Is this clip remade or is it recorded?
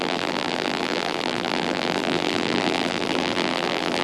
remade